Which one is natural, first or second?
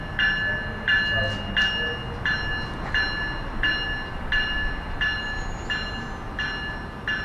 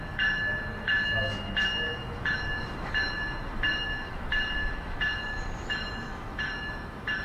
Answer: first